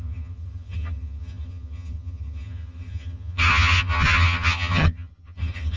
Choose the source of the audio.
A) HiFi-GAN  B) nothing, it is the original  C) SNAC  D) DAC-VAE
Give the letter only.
A